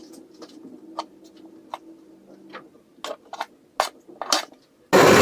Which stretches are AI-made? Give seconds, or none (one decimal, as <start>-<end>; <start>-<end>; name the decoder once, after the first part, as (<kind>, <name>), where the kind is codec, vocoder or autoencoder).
none